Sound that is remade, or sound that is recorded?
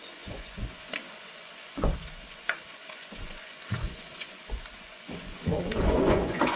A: remade